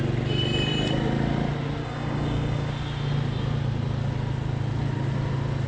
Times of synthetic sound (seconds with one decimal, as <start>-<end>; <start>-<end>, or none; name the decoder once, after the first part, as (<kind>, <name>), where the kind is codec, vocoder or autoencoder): 1.8-2.7 (codec, DAC)